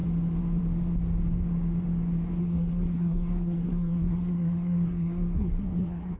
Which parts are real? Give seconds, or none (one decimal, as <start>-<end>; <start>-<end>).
0.0-2.4